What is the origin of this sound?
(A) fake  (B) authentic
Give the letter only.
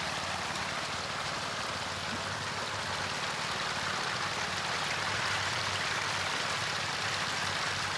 B